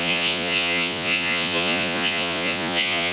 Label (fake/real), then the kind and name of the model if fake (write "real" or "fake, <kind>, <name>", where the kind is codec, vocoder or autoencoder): fake, vocoder, Vocos